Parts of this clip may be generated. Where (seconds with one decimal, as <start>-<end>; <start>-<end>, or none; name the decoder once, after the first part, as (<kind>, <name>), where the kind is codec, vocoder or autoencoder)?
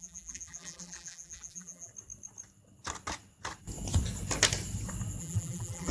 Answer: 0.0-1.9 (vocoder, BigVGAN v2); 5.2-5.9